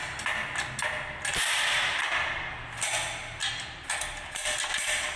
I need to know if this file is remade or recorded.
recorded